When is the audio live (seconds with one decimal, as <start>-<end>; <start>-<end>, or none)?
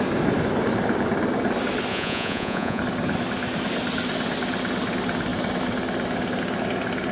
0.0-1.9; 2.8-7.1